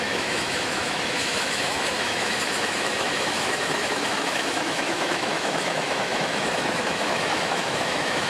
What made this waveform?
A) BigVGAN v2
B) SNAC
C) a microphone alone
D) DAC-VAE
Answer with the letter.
D